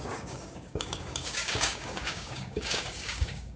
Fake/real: fake